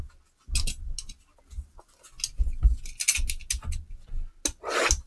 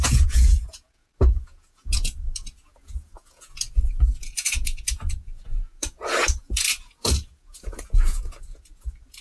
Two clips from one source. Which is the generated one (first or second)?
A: second